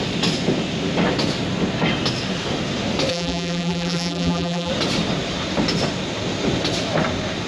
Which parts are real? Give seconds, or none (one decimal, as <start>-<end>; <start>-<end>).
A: 0.0-3.1; 4.7-7.5